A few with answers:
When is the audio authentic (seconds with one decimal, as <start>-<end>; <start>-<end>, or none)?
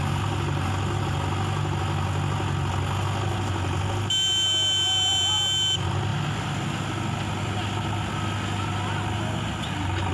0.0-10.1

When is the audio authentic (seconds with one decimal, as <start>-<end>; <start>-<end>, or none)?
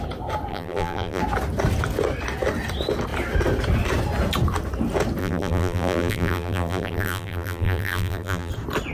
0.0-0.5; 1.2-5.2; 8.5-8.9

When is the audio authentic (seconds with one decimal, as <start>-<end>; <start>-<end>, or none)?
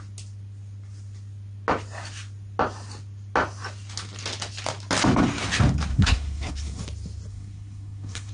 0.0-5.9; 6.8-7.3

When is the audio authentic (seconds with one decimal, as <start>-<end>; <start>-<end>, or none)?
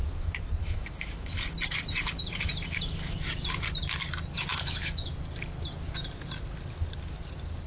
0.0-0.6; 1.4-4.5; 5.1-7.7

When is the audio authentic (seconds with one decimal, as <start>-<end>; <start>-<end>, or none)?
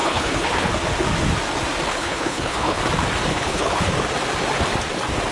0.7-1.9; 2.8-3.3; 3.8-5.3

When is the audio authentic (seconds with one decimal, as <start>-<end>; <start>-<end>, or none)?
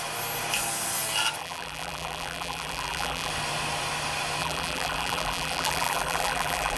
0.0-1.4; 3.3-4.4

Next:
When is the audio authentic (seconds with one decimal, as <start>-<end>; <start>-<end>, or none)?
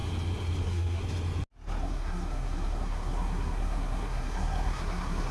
0.0-0.6; 1.0-1.8